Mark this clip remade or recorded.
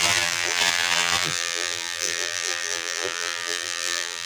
remade